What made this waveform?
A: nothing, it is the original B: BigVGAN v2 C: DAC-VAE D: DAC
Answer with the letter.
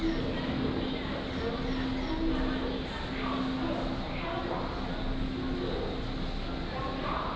A